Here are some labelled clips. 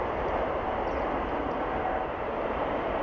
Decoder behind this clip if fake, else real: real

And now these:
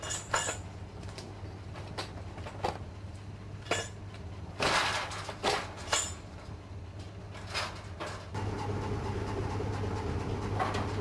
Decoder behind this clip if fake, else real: real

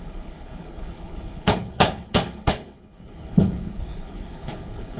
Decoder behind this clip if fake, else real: fake, codec, HILCodec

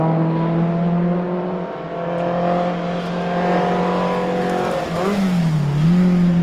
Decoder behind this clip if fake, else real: real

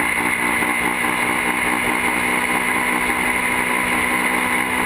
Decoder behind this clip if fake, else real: real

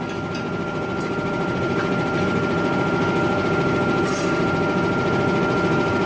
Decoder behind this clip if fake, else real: real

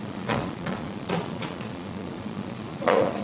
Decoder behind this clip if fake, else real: fake, vocoder, Vocos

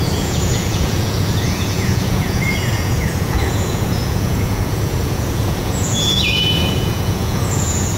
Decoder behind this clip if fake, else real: fake, vocoder, Vocos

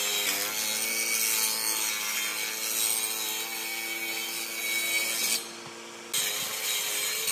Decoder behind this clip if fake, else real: real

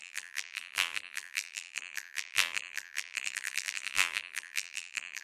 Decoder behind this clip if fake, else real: fake, vocoder, BigVGAN v2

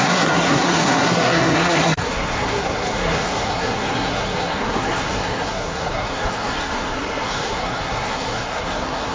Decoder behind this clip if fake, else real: fake, codec, SNAC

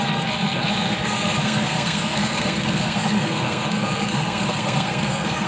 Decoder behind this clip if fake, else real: fake, codec, SNAC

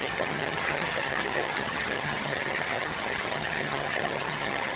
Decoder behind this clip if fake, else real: fake, vocoder, HiFi-GAN